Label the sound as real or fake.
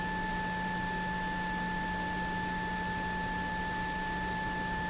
real